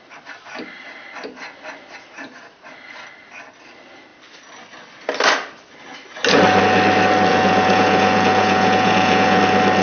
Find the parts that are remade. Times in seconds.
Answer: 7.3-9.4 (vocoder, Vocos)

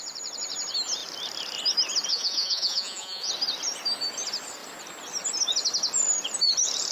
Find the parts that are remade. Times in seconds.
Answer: 2.1-3.3 (vocoder, Vocos)

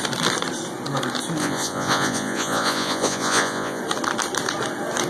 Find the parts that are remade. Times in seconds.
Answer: 1.4-3.8 (vocoder, Vocos)

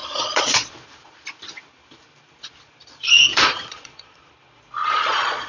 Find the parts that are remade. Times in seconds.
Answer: 0.0-0.7 (vocoder, Vocos); 3.3-4.3; 4.8-5.5

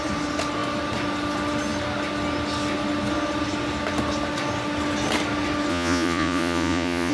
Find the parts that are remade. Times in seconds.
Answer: 5.7-7.1 (vocoder, Vocos)

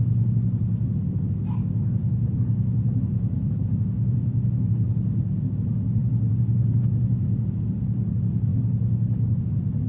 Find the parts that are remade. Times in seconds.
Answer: 2.0-4.7 (vocoder, Vocos); 6.0-8.1

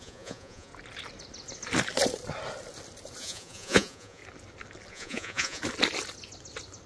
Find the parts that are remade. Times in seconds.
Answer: 0.0-0.7 (vocoder, Vocos); 3.2-4.2; 4.9-5.6